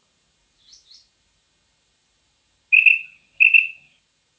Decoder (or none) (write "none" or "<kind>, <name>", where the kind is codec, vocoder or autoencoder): none